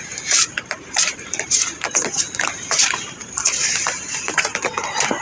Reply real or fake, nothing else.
fake